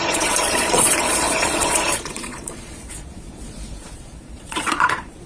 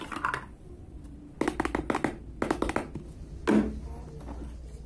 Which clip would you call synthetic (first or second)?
first